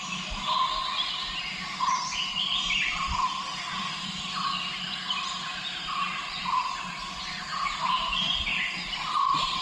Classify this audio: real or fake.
real